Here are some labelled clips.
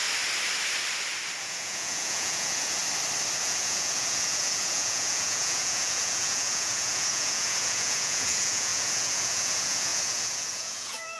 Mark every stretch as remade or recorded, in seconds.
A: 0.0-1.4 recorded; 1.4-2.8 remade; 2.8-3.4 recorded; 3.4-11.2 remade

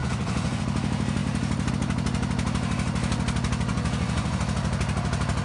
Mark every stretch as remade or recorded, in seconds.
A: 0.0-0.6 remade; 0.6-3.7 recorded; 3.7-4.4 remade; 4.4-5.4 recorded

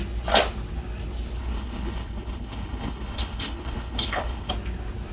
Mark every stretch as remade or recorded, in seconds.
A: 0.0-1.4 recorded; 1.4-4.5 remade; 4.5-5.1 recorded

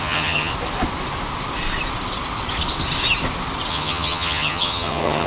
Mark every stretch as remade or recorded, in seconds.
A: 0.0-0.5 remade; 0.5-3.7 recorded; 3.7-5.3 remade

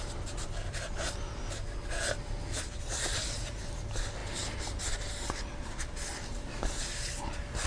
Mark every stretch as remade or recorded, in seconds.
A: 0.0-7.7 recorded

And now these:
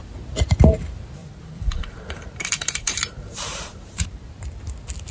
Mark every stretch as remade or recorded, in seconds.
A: 0.0-1.2 recorded; 1.2-4.3 remade; 4.3-5.1 recorded

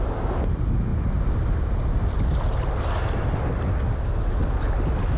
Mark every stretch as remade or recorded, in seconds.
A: 0.0-5.2 recorded

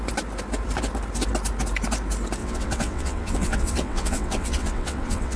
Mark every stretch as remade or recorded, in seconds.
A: 0.0-2.4 recorded; 2.4-5.4 remade